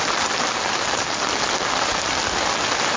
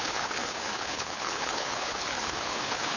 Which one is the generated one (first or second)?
second